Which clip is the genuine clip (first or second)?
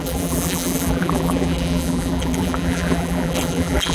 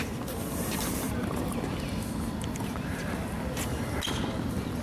second